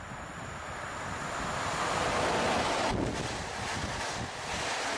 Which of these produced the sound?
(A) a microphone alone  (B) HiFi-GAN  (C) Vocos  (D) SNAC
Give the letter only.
A